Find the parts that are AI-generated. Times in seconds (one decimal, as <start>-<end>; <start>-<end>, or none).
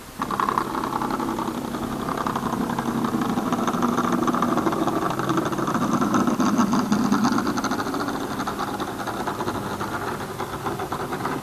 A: none